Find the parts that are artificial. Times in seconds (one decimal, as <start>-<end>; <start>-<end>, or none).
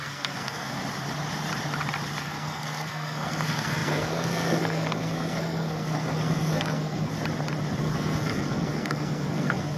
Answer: 0.0-0.8; 2.2-7.1; 7.8-9.8